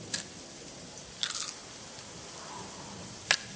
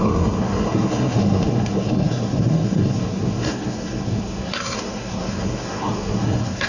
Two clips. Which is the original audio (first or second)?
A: first